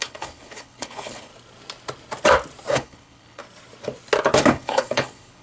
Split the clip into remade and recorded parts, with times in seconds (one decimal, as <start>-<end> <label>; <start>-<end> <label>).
0.0-1.3 remade; 1.3-2.7 recorded; 2.7-3.4 remade; 3.4-4.5 recorded; 4.5-5.4 remade